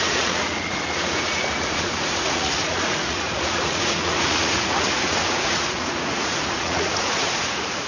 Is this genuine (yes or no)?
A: no